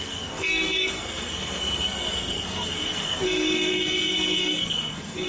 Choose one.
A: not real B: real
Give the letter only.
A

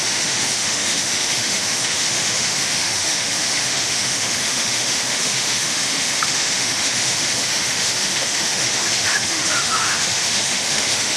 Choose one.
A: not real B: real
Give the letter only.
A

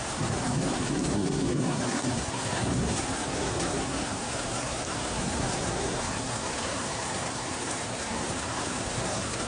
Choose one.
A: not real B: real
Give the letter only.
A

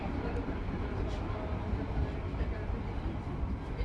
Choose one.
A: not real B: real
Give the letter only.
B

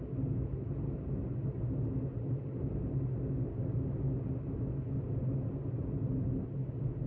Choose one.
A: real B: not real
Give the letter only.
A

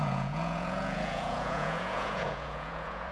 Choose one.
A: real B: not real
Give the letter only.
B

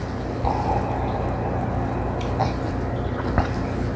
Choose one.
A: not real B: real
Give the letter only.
B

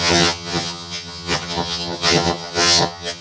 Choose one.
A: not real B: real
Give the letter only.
A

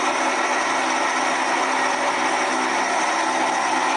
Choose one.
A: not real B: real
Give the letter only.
B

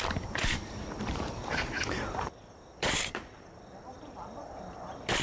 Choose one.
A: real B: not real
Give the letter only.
B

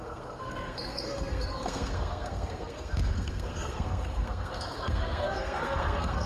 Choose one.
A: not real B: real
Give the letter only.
A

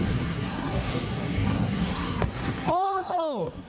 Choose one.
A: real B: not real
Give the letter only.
B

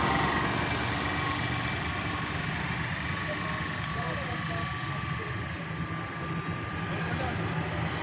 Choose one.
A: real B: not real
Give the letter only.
A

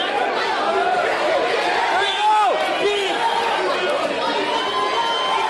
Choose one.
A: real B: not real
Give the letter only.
A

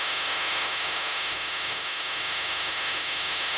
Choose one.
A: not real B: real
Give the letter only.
A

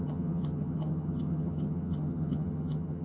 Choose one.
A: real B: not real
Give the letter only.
B